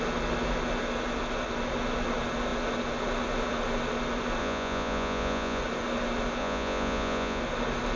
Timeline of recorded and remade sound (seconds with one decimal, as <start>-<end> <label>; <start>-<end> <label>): 0.0-4.4 recorded; 4.4-5.6 remade; 5.6-6.4 recorded; 6.4-7.4 remade; 7.4-8.0 recorded